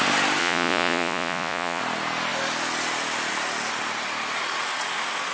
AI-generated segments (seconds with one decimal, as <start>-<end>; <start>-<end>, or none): 0.4-1.8